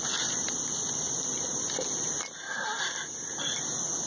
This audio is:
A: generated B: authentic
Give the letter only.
B